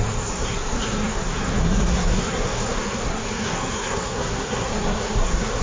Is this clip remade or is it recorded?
remade